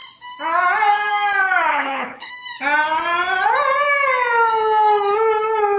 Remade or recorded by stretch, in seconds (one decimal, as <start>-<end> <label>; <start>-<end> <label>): 0.0-1.7 recorded; 1.7-2.3 remade; 2.3-5.8 recorded

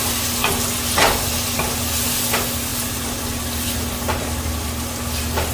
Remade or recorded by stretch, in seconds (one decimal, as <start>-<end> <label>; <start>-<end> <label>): 0.0-5.5 recorded

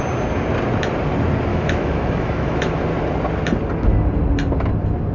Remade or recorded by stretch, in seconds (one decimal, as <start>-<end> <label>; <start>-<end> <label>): 0.0-1.5 recorded; 1.5-2.8 remade; 2.8-5.1 recorded

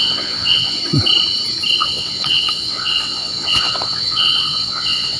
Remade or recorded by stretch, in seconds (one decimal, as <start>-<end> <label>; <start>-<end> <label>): 0.0-0.8 remade; 0.8-1.8 recorded; 1.8-5.2 remade

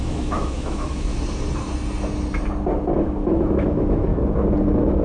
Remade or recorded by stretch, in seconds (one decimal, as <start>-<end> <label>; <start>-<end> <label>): 0.0-1.1 remade; 1.1-2.9 recorded; 2.9-4.1 remade; 4.1-4.6 recorded; 4.6-5.0 remade